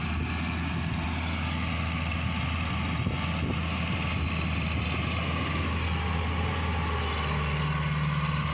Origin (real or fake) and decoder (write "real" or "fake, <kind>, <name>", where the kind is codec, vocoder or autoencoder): real